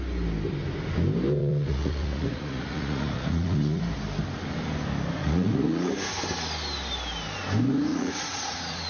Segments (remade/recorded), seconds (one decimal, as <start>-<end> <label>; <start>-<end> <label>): 0.0-1.4 recorded; 1.4-3.8 remade; 3.8-5.2 recorded; 5.2-5.9 remade; 5.9-7.9 recorded; 7.9-8.9 remade